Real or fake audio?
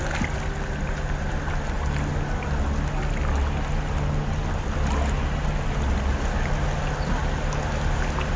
real